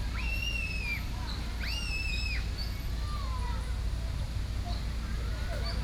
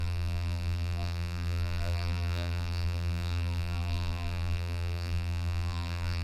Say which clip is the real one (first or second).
first